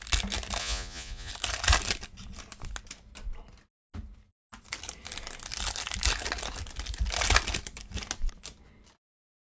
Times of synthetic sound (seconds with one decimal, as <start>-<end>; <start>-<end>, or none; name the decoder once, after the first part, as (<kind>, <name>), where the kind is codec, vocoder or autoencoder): 0.6-1.3 (vocoder, Vocos)